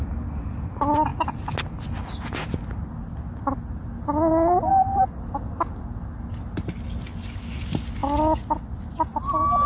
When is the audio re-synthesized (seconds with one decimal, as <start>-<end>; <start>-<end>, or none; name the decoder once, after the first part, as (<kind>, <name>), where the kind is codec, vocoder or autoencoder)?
none

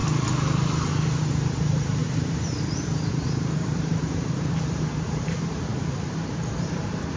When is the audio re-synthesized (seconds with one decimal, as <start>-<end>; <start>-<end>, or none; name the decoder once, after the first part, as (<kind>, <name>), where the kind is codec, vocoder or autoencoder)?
0.9-5.7 (vocoder, BigVGAN v2); 6.7-7.2

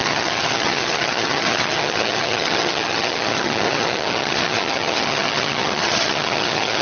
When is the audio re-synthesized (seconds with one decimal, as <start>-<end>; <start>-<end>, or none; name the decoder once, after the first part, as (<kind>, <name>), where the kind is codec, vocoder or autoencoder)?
0.0-6.8 (vocoder, HiFi-GAN)

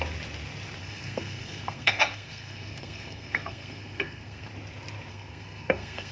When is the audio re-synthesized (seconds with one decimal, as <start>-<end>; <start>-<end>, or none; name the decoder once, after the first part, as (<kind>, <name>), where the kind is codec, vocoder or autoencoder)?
0.8-4.5 (codec, SNAC); 5.1-6.1

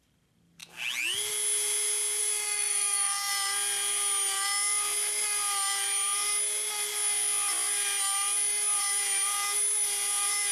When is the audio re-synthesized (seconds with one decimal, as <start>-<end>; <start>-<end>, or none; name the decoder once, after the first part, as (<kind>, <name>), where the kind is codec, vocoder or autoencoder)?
2.2-3.3 (autoencoder, DAC-VAE)

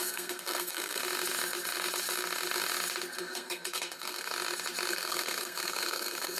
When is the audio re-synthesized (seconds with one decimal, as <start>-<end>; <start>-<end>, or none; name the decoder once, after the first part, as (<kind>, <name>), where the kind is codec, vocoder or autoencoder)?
0.0-1.0 (codec, SNAC); 3.2-4.3; 4.9-6.4

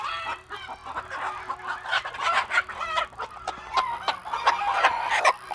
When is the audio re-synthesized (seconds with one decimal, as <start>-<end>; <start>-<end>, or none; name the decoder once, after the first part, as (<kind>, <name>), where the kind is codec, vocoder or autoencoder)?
0.0-0.8 (vocoder, BigVGAN v2); 3.7-4.2; 4.9-5.5

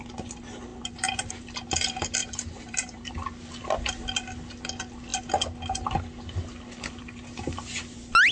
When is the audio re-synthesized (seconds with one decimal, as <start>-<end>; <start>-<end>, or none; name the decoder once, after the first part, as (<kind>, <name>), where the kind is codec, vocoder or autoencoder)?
2.2-3.1 (vocoder, BigVGAN v2)